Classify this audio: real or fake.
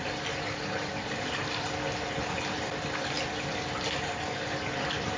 real